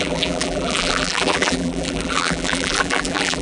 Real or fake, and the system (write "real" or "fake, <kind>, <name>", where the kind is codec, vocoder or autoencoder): fake, vocoder, BigVGAN v2